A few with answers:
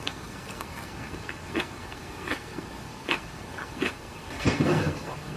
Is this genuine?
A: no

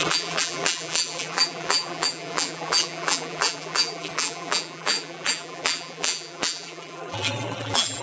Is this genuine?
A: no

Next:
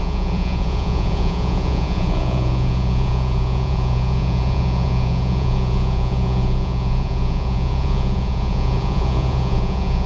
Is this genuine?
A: no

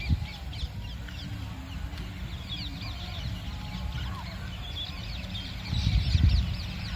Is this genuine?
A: yes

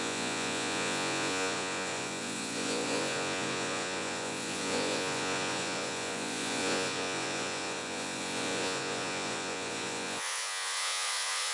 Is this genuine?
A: no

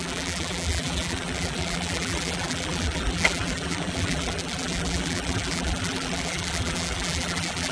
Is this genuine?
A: no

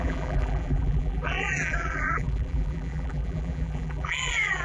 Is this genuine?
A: no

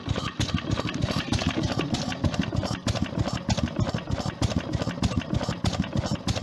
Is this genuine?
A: yes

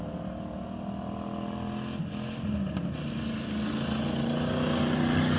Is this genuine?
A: yes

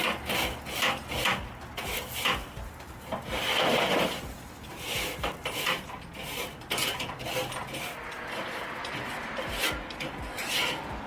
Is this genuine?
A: yes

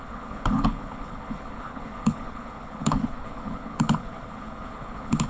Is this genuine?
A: no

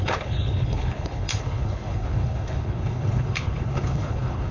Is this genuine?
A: no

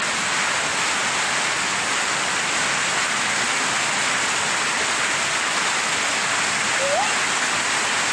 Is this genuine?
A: yes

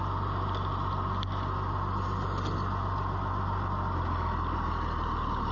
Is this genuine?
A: yes